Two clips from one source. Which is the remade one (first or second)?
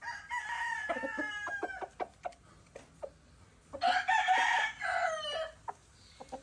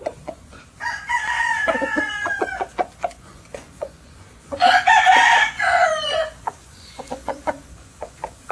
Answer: second